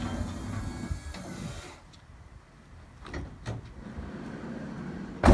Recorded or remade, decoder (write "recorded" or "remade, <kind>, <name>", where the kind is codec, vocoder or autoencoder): recorded